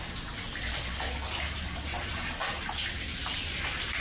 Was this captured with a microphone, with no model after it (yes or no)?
yes